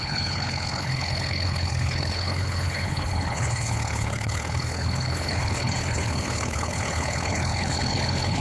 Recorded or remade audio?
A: remade